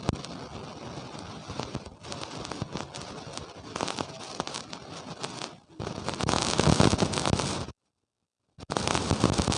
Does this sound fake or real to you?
real